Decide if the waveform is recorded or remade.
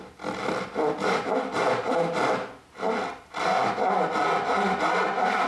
recorded